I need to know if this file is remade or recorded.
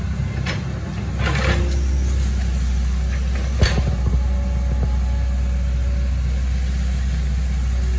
recorded